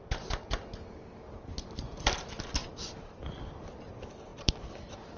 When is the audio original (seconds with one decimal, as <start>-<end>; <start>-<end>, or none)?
0.0-2.6; 3.2-4.3